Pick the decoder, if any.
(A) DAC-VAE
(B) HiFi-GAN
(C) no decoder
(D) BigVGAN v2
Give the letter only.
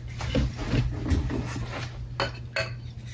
C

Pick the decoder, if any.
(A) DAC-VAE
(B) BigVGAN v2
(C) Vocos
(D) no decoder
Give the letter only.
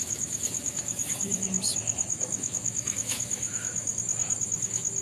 A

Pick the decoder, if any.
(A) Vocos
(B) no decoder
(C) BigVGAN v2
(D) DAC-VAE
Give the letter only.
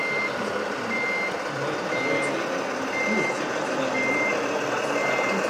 B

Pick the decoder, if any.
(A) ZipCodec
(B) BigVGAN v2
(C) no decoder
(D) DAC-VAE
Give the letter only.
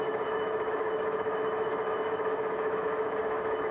D